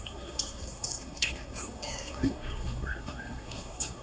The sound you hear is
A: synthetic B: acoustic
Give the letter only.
A